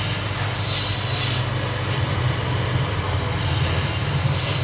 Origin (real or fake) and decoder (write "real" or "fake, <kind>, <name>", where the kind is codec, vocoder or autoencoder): real